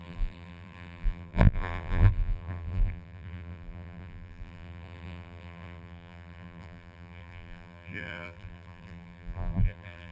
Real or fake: fake